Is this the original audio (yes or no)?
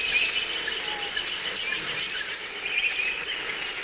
yes